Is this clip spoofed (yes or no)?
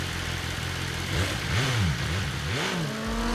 no